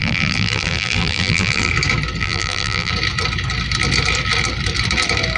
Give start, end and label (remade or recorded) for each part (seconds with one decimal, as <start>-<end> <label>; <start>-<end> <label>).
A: 0.0-1.7 remade; 1.7-2.2 recorded; 2.2-2.9 remade; 2.9-5.4 recorded